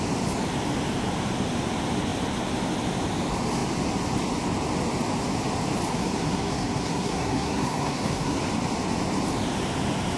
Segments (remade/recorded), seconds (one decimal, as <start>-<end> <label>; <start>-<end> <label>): 0.0-5.9 recorded; 5.9-8.4 remade; 8.4-10.2 recorded

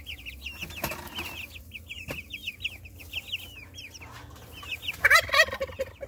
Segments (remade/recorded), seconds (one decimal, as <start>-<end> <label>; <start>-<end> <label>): 0.0-6.1 recorded

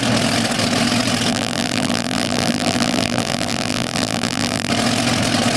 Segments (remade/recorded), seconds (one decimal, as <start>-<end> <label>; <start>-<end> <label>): 0.0-1.3 recorded; 1.3-4.7 remade; 4.7-5.6 recorded

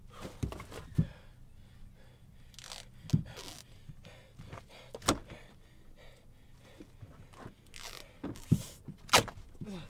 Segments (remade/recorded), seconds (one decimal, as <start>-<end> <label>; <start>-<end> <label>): 0.0-9.9 recorded

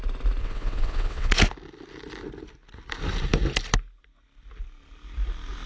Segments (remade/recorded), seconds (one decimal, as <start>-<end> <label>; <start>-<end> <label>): 0.0-0.4 recorded; 0.4-1.3 remade; 1.3-5.7 recorded

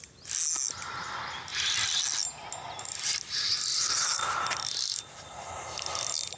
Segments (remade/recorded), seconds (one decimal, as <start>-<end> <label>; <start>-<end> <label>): 0.0-3.7 recorded; 3.7-4.4 remade; 4.4-6.4 recorded